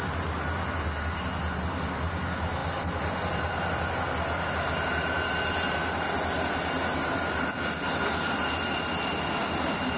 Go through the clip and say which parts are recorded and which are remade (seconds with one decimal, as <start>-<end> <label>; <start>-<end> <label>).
0.0-10.0 recorded

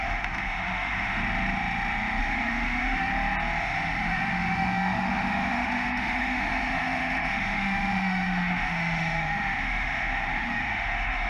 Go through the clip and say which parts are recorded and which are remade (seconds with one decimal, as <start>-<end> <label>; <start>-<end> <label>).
0.0-1.2 remade; 1.2-2.2 recorded; 2.2-3.1 remade; 3.1-3.6 recorded; 3.6-11.3 remade